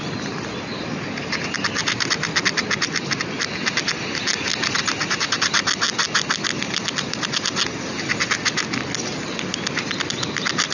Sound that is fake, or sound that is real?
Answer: real